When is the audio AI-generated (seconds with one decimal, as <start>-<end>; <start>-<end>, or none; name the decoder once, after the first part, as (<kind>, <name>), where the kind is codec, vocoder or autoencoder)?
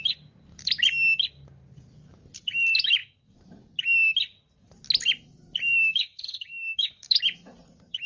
5.7-7.2 (codec, DAC)